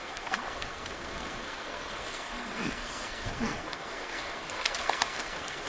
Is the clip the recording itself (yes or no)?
no